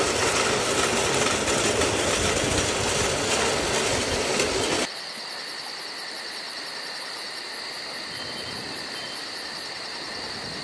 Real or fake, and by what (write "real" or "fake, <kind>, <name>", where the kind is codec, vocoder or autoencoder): real